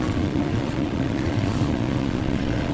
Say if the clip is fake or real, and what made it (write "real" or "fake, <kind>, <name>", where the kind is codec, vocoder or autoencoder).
fake, vocoder, Vocos